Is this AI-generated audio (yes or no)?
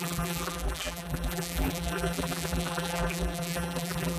yes